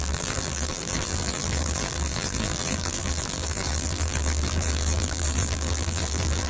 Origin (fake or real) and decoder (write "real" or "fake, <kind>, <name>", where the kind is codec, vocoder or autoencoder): fake, vocoder, BigVGAN v2